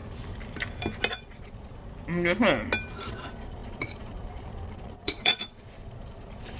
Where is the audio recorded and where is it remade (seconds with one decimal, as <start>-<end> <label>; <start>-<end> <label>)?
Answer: 0.0-1.1 recorded; 1.1-1.8 remade; 1.8-3.1 recorded; 3.1-6.6 remade